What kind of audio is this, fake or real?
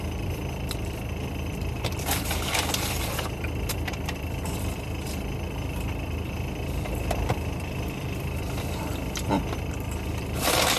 fake